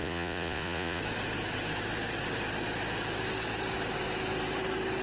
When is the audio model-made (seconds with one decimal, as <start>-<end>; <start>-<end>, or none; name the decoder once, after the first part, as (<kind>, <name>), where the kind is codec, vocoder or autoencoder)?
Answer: 0.0-1.0 (vocoder, Vocos)